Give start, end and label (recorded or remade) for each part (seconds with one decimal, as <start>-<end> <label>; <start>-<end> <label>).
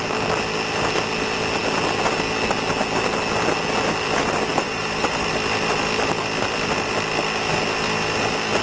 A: 0.0-4.5 recorded; 4.5-5.3 remade; 5.3-8.6 recorded